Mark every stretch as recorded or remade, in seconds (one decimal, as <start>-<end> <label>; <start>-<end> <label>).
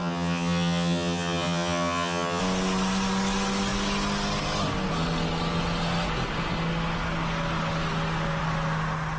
0.0-2.4 remade; 2.4-9.2 recorded